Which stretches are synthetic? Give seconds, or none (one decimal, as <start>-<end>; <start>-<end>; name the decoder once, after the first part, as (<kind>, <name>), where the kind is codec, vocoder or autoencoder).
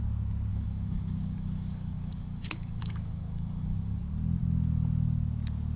0.5-4.0 (codec, DAC)